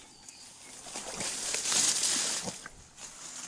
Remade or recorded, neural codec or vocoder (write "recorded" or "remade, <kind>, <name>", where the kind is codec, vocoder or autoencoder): recorded